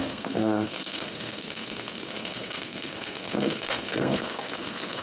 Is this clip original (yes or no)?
no